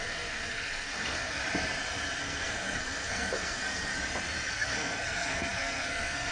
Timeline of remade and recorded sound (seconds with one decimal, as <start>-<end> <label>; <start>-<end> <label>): 0.0-1.4 remade; 1.4-2.2 recorded; 2.2-3.9 remade; 3.9-4.5 recorded; 4.5-6.3 remade